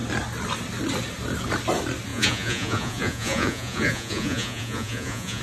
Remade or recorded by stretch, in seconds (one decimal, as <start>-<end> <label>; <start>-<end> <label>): 0.0-2.1 recorded; 2.1-5.4 remade